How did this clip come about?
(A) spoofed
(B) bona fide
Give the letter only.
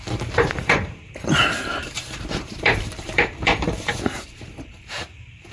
A